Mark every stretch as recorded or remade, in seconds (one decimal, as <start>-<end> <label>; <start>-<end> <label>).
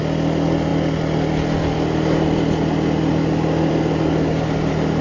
0.0-5.0 recorded